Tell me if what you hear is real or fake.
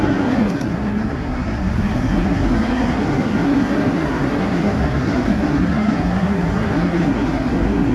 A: fake